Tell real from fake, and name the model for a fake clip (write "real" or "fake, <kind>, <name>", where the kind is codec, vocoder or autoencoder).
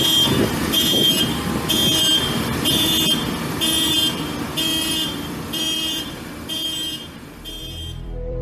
fake, vocoder, BigVGAN v2